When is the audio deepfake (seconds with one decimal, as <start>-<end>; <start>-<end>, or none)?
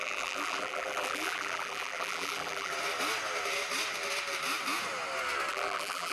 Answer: 0.0-2.7; 5.5-6.1